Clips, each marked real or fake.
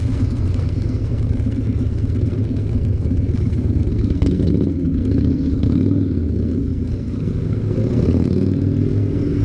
fake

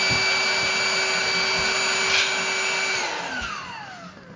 real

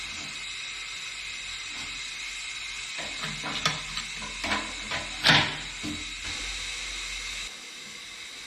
real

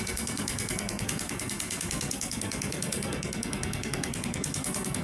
fake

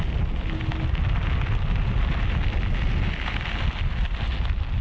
real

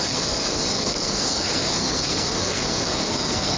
fake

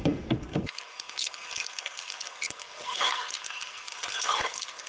fake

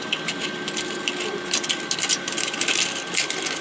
real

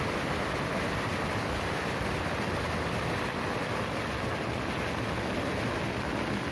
real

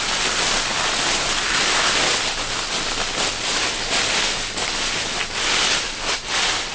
real